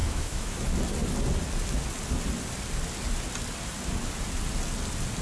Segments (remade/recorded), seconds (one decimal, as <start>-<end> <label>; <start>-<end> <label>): 0.0-0.6 remade; 0.6-5.2 recorded